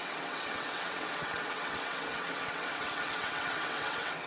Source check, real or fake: fake